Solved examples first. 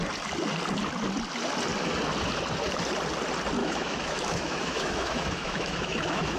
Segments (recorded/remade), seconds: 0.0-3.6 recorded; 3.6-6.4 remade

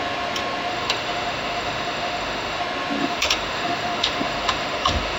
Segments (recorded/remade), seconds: 0.0-0.7 recorded; 0.7-2.6 remade; 2.6-3.0 recorded; 3.0-5.2 remade